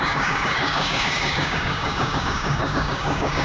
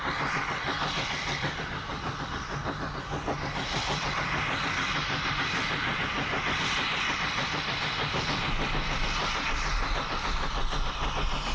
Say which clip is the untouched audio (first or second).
second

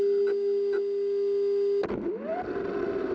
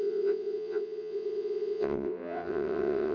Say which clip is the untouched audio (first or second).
first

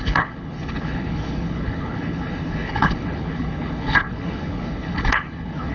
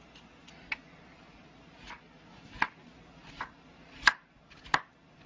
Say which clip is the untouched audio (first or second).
second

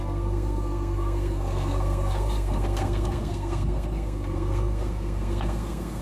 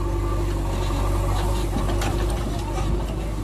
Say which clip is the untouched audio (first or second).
second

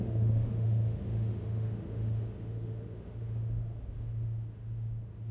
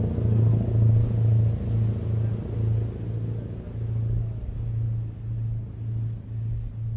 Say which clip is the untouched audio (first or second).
second